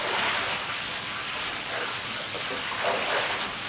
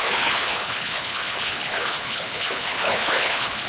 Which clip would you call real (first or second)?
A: first